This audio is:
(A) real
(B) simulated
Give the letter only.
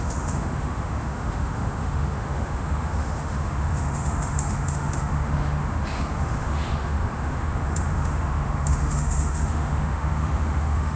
B